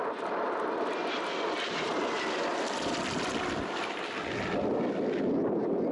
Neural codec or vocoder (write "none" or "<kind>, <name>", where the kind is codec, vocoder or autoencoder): none